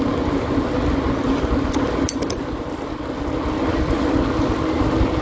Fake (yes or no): no